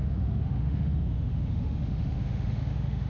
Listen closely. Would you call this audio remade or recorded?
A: remade